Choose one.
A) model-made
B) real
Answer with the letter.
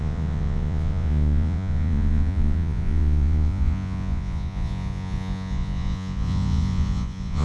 A